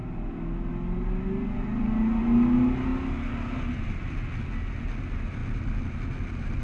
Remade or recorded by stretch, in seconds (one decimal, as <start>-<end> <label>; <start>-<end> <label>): 0.0-6.6 recorded